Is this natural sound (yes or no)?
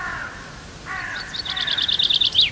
yes